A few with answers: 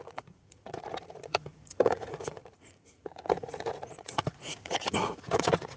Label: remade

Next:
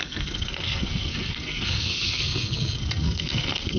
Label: remade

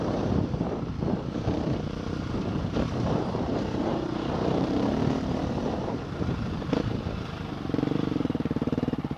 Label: remade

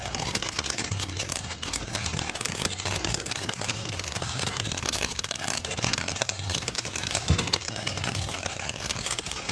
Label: remade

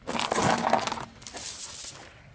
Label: recorded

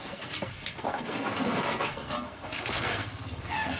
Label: remade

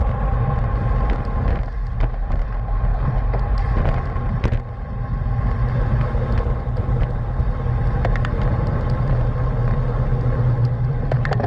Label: recorded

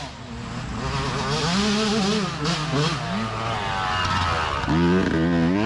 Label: recorded